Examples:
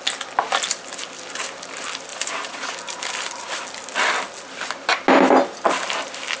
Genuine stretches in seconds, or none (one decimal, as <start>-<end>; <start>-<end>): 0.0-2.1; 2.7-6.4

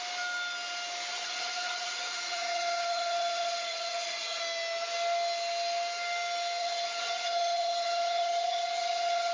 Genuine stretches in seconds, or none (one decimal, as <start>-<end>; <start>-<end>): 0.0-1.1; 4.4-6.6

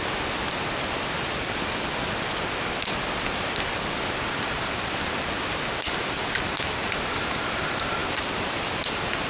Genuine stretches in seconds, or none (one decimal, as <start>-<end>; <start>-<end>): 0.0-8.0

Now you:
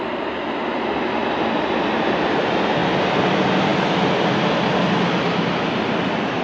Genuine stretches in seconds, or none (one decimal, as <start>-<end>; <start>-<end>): 0.0-6.4